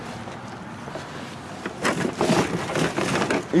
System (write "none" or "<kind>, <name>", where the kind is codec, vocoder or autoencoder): none